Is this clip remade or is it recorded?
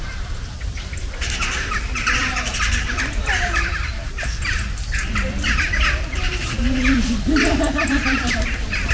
remade